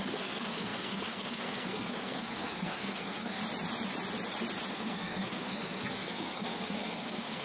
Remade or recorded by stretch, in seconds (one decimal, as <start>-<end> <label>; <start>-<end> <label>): 0.0-3.4 remade; 3.4-4.7 recorded; 4.7-7.4 remade